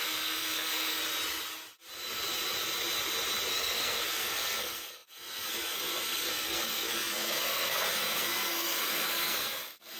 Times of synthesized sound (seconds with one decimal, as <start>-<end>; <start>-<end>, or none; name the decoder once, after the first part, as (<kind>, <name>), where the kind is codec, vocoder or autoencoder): 0.0-1.0 (codec, SNAC); 3.5-10.0